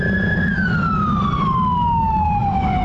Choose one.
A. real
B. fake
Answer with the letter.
A